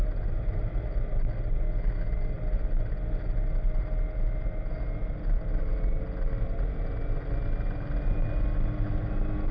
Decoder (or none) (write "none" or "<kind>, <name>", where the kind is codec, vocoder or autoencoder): none